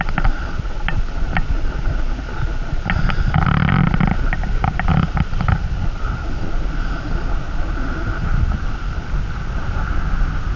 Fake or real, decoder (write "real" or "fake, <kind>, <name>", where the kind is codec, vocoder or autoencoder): real